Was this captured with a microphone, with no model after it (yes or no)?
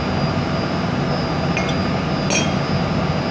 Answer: yes